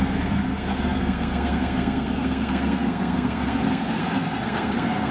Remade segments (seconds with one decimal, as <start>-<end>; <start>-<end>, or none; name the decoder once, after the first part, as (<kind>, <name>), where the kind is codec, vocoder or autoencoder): 0.0-5.1 (codec, SNAC)

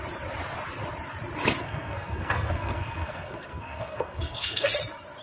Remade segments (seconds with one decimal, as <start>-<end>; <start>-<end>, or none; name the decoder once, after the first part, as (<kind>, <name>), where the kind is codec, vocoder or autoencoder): 1.6-4.7 (codec, SNAC)

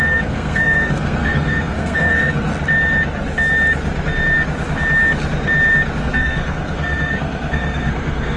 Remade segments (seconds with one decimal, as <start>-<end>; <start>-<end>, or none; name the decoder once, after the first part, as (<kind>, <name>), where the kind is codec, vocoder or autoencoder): 0.0-2.5 (codec, SNAC); 6.0-8.4

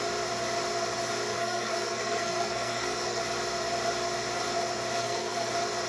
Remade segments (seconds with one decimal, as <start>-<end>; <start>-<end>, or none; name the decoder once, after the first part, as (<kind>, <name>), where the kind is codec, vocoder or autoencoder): 1.3-3.2 (codec, SNAC); 5.0-5.5

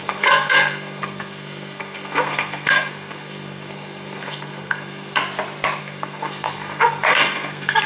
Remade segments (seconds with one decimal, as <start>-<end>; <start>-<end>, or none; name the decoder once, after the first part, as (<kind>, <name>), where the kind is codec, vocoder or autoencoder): 0.0-5.2 (codec, SNAC); 5.8-7.9